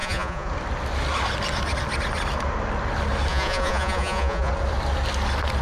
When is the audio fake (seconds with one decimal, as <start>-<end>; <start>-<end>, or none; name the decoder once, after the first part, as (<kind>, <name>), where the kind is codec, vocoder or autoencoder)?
0.0-0.5 (vocoder, Vocos); 3.3-4.5

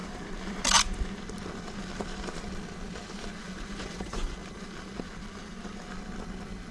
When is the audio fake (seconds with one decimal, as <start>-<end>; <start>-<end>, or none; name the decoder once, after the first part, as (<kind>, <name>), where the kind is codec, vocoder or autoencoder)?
3.4-4.4 (vocoder, Vocos)

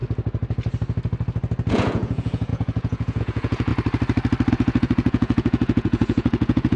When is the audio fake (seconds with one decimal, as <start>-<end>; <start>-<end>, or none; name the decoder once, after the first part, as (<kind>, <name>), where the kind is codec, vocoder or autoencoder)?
1.7-3.7 (vocoder, Vocos); 4.5-6.8

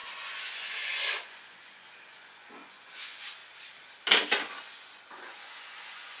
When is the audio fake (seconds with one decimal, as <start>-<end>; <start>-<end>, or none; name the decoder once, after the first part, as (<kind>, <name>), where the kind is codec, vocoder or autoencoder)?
0.0-3.4 (vocoder, Vocos); 4.4-6.2

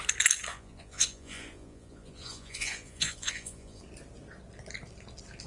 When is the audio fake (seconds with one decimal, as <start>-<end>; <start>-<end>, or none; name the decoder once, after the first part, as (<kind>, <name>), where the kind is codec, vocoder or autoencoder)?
0.5-3.8 (vocoder, Vocos)

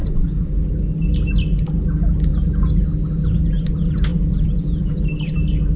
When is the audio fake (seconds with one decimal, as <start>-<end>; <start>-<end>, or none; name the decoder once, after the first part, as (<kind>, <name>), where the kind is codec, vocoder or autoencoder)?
4.1-5.0 (vocoder, Vocos)

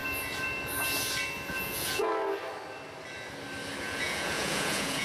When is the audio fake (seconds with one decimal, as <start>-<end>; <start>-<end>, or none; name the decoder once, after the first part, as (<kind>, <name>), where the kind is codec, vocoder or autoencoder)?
1.5-2.1 (vocoder, Vocos); 3.8-5.0